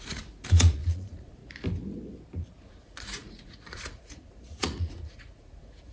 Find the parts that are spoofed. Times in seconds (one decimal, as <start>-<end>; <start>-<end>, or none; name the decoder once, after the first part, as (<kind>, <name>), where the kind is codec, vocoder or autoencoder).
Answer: 0.0-1.4 (vocoder, Vocos); 2.7-5.9